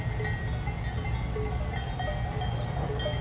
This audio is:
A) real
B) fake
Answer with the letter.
A